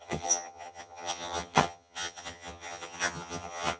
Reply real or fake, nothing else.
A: fake